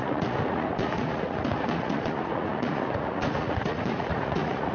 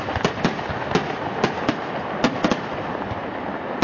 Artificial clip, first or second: first